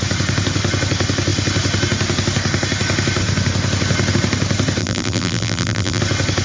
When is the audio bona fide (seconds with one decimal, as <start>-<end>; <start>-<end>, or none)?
0.0-4.8; 6.0-6.4